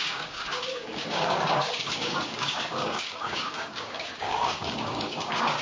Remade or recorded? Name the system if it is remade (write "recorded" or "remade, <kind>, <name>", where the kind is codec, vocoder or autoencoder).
remade, codec, DAC